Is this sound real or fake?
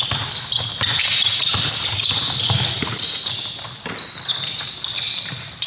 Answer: real